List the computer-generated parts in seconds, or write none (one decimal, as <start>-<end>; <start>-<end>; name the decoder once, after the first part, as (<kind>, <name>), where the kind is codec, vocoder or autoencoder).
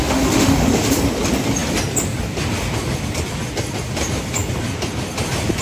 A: 0.0-1.0 (autoencoder, DAC-VAE)